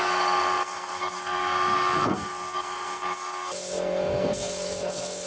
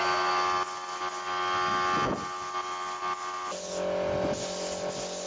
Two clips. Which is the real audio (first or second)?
second